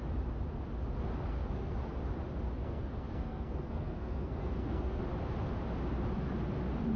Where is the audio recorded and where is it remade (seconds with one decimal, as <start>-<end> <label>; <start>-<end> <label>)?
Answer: 0.0-1.3 recorded; 1.3-1.8 remade; 1.8-2.6 recorded; 2.6-5.0 remade; 5.0-7.0 recorded